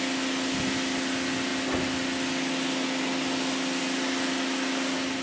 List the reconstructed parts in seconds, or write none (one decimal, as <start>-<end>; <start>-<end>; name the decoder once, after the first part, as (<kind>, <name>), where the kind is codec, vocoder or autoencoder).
none